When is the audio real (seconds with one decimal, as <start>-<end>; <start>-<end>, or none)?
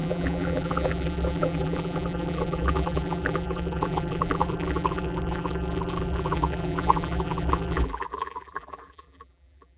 none